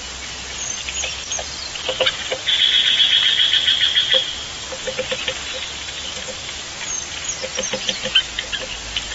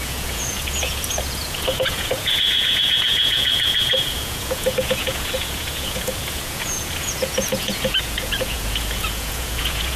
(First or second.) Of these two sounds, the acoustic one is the first